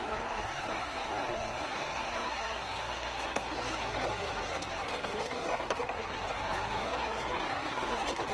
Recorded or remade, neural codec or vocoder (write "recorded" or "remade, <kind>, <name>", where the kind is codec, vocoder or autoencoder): remade, codec, SNAC